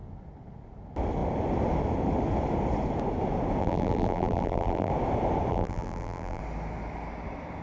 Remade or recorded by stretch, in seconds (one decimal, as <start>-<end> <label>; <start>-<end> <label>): 0.0-3.6 recorded; 3.6-4.9 remade; 4.9-5.5 recorded; 5.5-6.4 remade; 6.4-7.6 recorded